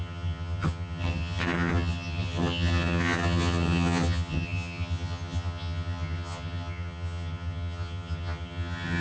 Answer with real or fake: fake